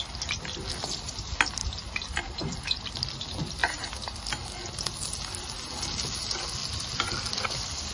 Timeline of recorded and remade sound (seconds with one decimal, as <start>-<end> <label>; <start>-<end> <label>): 0.0-1.6 recorded; 1.6-2.9 remade; 2.9-6.6 recorded; 6.6-7.9 remade